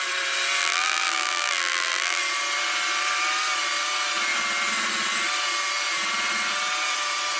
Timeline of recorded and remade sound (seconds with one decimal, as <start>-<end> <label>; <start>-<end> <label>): 0.0-0.6 recorded; 0.6-2.2 remade; 2.2-7.4 recorded